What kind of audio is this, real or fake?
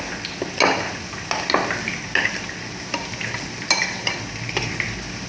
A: real